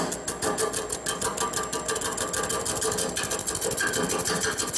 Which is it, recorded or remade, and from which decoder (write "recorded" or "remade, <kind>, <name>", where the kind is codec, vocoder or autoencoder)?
recorded